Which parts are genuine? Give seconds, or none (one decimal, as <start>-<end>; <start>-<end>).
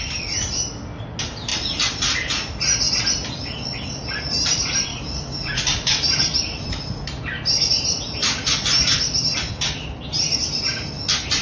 0.0-4.9; 6.7-11.4